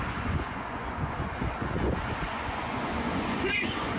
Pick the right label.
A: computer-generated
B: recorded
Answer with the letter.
A